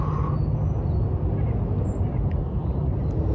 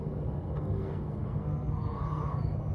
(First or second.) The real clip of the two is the first